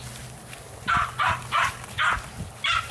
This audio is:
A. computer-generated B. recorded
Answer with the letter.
B